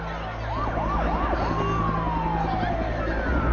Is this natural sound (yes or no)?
yes